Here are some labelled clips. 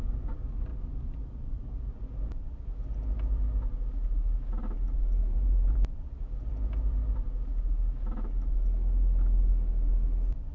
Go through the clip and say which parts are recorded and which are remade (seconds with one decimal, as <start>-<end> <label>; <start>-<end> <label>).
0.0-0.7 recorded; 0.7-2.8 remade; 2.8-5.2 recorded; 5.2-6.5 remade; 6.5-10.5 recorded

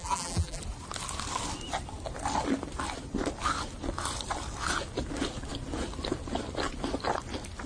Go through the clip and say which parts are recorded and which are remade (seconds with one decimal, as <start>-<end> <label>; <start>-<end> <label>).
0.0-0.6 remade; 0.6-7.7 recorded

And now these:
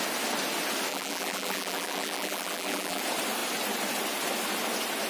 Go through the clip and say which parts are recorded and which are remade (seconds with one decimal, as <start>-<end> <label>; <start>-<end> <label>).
0.0-0.9 recorded; 0.9-3.0 remade; 3.0-5.1 recorded

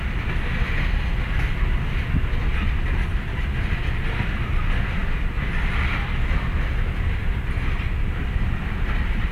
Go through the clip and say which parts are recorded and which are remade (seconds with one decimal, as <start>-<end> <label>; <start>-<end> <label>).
0.0-9.3 recorded